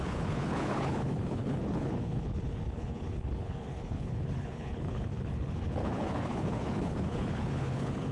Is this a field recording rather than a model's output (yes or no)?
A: no